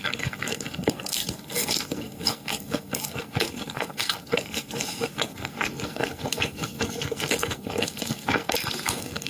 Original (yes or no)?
no